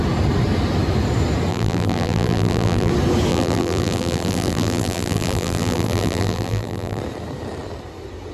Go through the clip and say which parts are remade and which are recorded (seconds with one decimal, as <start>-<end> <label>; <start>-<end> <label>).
0.0-1.5 recorded; 1.5-2.9 remade; 2.9-3.3 recorded; 3.3-7.0 remade; 7.0-8.3 recorded

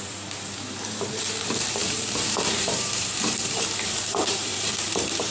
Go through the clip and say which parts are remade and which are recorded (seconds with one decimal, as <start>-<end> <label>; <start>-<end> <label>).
0.0-5.3 remade

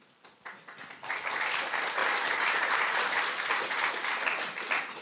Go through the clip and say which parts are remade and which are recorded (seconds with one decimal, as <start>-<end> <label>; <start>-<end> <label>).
0.0-2.0 recorded; 2.0-3.9 remade; 3.9-5.0 recorded

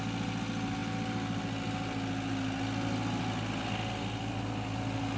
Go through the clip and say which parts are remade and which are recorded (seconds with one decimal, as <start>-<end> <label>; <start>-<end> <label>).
0.0-5.2 recorded

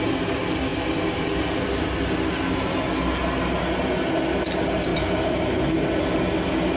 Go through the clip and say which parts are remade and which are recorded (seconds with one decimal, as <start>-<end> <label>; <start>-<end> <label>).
0.0-0.7 recorded; 0.7-2.3 remade; 2.3-4.9 recorded; 4.9-6.1 remade; 6.1-6.8 recorded